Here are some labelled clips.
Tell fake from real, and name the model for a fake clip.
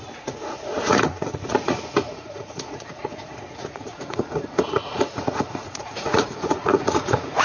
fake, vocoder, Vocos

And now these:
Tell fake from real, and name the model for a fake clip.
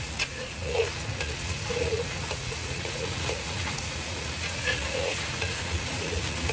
fake, vocoder, Vocos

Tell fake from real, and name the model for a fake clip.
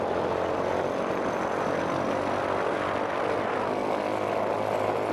real